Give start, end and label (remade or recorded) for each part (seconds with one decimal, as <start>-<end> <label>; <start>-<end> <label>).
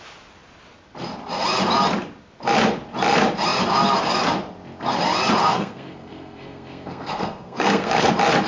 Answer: 0.0-5.4 recorded; 5.4-8.1 remade; 8.1-8.5 recorded